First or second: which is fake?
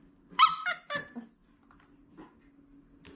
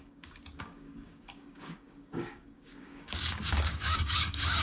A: second